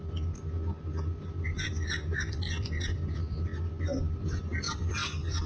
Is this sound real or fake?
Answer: real